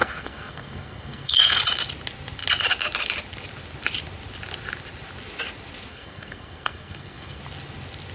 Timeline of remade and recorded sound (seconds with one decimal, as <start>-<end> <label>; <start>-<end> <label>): 0.0-1.6 remade; 1.6-5.9 recorded; 5.9-7.4 remade; 7.4-8.1 recorded